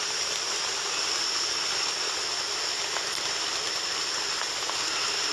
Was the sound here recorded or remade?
recorded